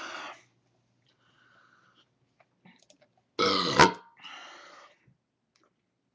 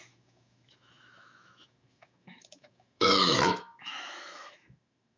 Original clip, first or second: first